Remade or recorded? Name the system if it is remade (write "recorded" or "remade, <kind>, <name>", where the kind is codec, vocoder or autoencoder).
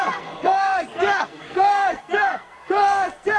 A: remade, codec, SNAC